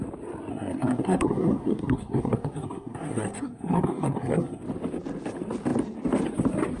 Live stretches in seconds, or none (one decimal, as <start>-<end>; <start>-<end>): 0.0-0.5; 4.6-6.8